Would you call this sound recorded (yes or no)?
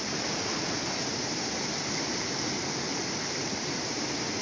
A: yes